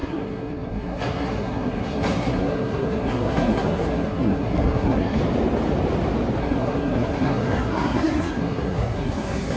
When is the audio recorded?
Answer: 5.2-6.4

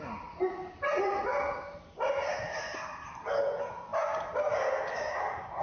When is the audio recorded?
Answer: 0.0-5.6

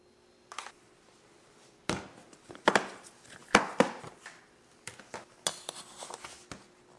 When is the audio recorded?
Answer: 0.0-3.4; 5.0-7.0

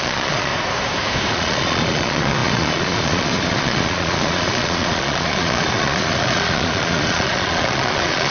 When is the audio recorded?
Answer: 0.5-1.3